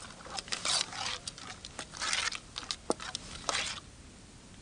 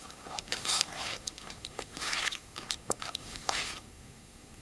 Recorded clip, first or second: first